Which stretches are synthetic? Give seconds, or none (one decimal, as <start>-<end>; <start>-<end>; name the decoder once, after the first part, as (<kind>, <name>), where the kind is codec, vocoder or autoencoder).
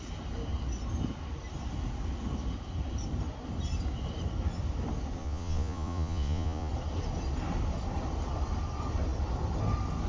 5.2-6.7 (vocoder, Vocos)